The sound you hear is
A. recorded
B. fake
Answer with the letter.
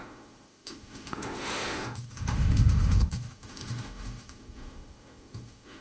B